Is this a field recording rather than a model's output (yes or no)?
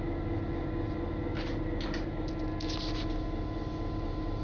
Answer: yes